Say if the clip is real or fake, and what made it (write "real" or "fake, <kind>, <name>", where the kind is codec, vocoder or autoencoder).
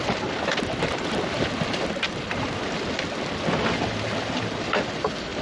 real